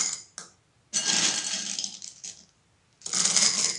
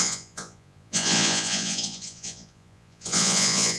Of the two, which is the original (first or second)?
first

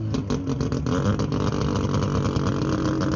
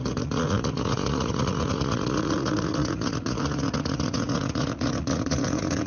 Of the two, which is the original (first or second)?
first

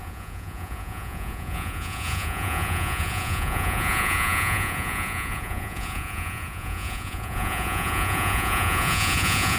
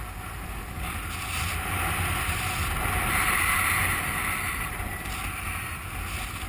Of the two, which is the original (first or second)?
second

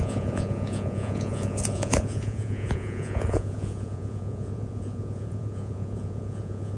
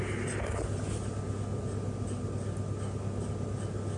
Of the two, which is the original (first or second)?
second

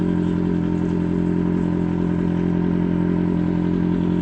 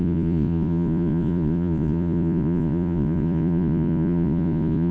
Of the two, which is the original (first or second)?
first